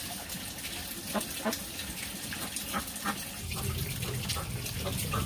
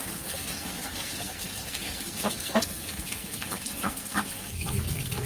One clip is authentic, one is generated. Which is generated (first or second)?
second